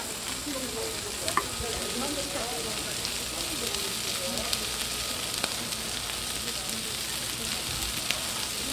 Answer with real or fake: real